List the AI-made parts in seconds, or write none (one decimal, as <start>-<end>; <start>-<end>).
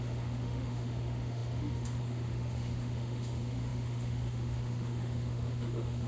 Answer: 0.0-6.1